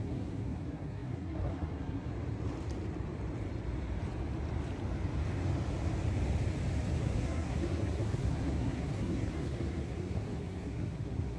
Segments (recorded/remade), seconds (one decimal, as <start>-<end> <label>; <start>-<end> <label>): 0.0-2.1 remade; 2.1-7.0 recorded; 7.0-11.4 remade